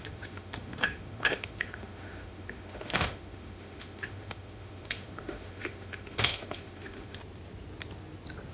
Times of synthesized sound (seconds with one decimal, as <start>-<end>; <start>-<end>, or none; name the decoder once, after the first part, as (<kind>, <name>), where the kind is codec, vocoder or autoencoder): 0.0-7.2 (autoencoder, DAC-VAE)